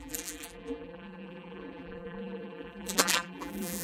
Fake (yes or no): yes